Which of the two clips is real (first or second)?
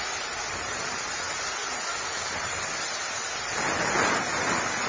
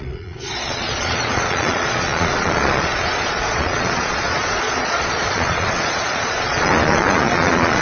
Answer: first